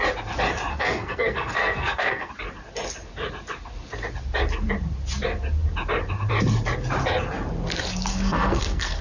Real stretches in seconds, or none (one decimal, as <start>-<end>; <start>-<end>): 0.0-0.7; 2.3-8.1